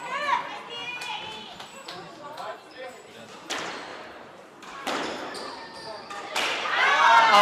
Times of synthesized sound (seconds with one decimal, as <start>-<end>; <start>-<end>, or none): 2.5-3.5; 3.9-7.4